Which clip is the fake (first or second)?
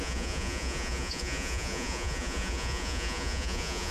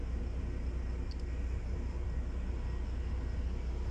first